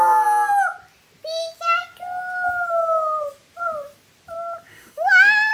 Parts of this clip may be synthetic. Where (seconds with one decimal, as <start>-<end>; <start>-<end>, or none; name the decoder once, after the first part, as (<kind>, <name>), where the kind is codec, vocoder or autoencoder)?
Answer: 4.7-5.5 (autoencoder, DAC-VAE)